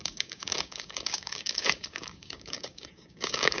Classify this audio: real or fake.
fake